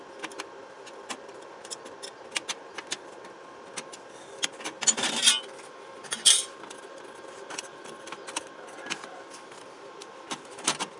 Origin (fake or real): real